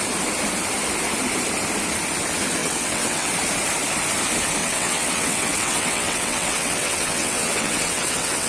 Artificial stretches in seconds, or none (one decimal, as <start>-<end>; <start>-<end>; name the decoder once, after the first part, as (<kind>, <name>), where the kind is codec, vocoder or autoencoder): 2.6-3.3 (vocoder, WaveNeXt); 4.6-8.5